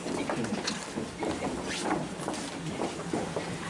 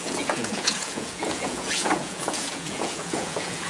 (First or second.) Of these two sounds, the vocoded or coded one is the second